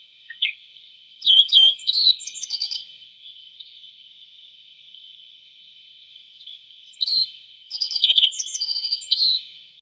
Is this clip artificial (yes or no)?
yes